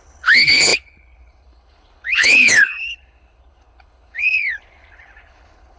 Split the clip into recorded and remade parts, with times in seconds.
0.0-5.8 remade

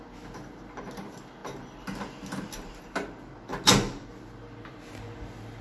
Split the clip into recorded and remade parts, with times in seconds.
0.0-5.6 recorded

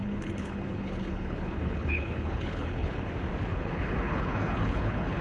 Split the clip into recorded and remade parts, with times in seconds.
0.0-3.1 remade; 3.1-3.5 recorded; 3.5-5.2 remade

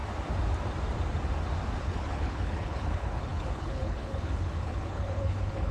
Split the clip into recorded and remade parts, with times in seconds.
0.0-1.8 recorded; 1.8-5.7 remade

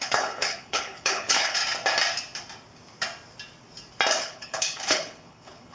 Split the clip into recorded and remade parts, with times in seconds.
0.0-1.6 remade; 1.6-4.2 recorded; 4.2-5.7 remade